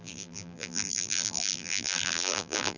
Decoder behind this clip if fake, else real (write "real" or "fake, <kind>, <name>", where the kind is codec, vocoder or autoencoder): fake, vocoder, BigVGAN v2